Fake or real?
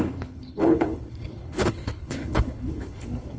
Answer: fake